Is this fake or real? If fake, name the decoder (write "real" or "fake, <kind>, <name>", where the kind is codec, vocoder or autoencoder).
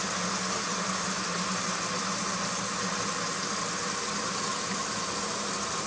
real